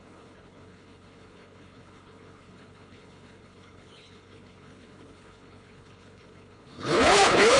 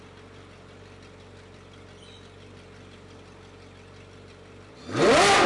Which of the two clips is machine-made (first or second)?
first